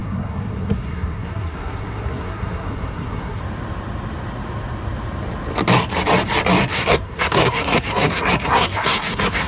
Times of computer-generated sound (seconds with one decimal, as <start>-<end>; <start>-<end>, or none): 0.0-3.4; 6.7-9.5